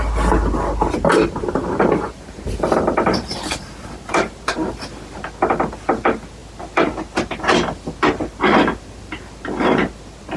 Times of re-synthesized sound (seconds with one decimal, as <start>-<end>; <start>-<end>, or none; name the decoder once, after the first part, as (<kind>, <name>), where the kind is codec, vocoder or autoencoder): 1.4-4.5 (vocoder, BigVGAN v2)

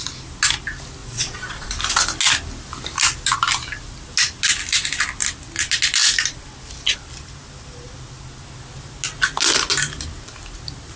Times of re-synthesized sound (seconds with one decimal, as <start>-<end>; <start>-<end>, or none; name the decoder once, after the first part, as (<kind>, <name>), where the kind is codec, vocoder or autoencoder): 1.0-1.7 (vocoder, Vocos)

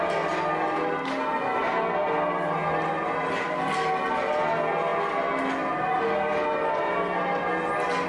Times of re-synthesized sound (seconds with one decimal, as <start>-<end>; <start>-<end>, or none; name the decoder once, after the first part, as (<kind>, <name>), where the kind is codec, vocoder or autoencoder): none

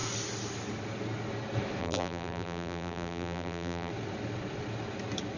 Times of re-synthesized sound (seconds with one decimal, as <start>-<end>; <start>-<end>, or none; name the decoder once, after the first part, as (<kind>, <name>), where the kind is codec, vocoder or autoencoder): 1.8-3.9 (vocoder, BigVGAN v2)

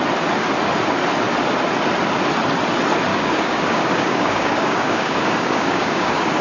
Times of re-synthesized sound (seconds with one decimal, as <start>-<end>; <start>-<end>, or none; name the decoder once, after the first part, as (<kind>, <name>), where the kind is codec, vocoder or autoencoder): 3.1-6.4 (codec, DAC)